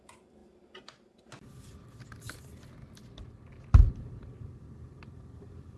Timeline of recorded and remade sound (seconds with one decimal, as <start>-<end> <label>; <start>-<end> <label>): 0.0-5.8 recorded